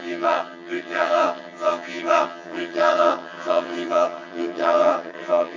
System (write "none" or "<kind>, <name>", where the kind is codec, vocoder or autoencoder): vocoder, HiFi-GAN